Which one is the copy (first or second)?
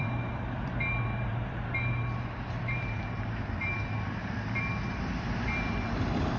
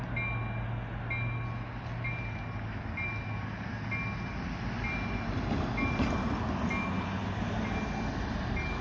first